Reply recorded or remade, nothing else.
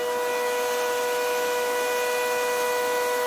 recorded